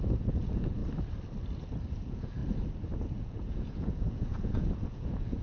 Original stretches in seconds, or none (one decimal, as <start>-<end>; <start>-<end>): 0.8-1.9; 2.4-3.0